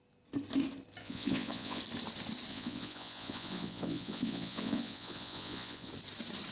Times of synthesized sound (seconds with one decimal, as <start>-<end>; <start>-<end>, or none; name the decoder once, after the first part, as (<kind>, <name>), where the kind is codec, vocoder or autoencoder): 1.0-1.8 (vocoder, Vocos); 2.5-5.9